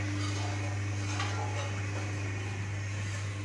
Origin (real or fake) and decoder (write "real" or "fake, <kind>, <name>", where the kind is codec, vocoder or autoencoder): real